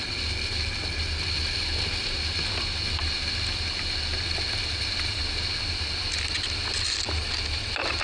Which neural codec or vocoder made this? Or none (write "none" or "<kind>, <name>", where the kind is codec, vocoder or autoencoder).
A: none